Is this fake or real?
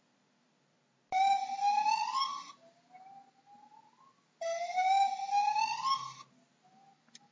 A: real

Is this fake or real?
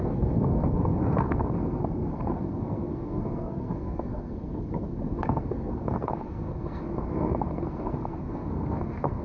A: fake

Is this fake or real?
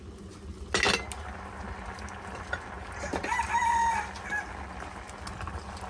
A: real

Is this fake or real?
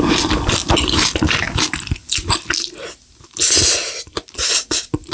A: real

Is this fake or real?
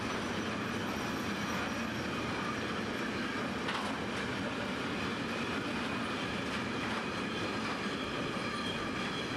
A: real